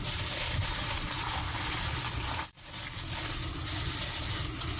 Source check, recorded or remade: recorded